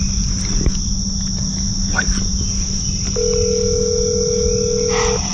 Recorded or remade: recorded